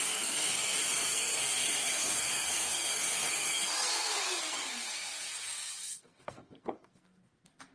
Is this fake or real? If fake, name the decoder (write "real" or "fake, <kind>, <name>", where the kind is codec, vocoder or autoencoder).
fake, codec, SNAC